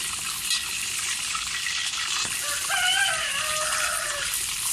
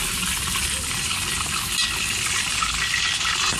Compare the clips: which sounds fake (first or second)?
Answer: first